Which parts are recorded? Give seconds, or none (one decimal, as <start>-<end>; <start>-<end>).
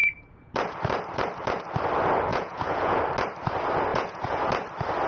0.5-2.3; 3.0-3.9; 4.4-5.1